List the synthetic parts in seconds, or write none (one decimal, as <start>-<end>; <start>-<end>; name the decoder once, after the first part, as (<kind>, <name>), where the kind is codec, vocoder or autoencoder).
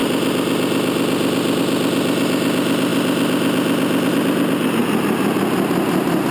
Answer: none